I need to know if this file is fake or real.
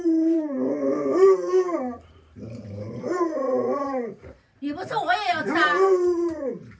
fake